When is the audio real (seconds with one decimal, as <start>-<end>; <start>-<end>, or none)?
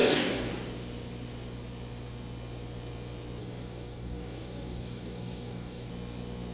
0.5-3.4; 5.9-6.5